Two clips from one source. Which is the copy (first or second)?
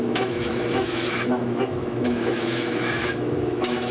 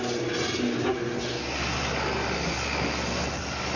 first